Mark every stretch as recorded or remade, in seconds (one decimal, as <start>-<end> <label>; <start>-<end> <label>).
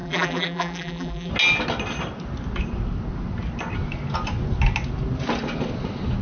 0.0-1.3 remade; 1.3-6.2 recorded